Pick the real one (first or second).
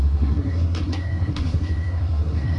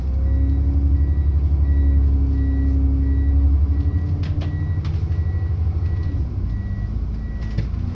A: second